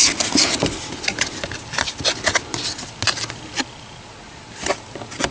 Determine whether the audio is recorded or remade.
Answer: recorded